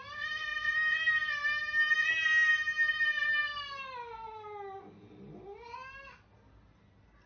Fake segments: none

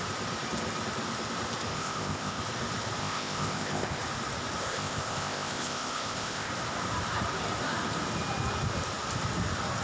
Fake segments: 1.7-2.4 (codec, ZipCodec); 3.0-4.0; 4.6-6.5

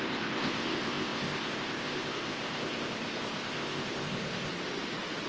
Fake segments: 0.0-4.5 (codec, ZipCodec)

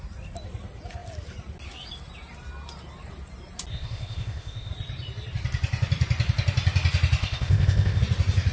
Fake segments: 3.7-4.7 (codec, ZipCodec); 7.2-8.0

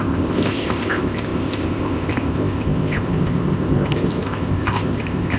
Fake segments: 0.0-5.4 (codec, ZipCodec)

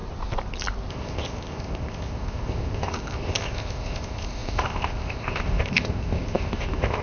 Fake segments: 0.9-7.0 (codec, ZipCodec)

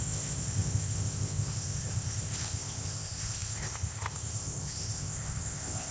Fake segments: 0.0-5.9 (codec, ZipCodec)

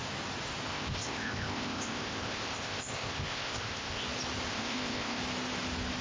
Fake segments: 0.7-4.0 (codec, ZipCodec); 4.5-5.2